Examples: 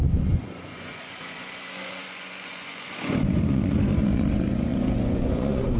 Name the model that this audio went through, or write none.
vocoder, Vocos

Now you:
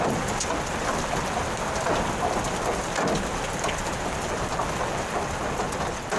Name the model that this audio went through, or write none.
none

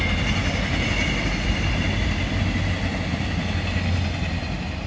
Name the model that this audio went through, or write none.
none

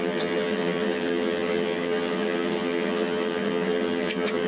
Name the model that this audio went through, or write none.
vocoder, HiFi-GAN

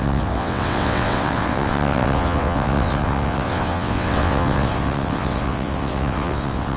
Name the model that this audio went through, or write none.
vocoder, WaveNeXt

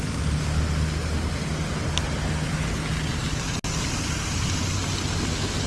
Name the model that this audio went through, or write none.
none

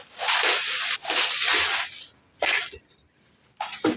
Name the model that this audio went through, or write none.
none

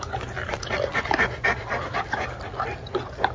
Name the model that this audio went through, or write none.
none